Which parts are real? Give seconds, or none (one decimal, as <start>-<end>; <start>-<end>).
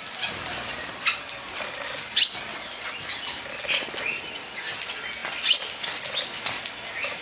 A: 0.0-2.5; 3.6-7.2